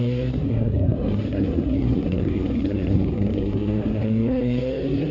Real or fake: fake